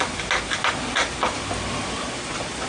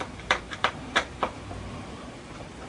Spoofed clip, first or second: second